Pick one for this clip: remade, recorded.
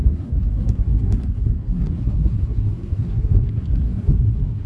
remade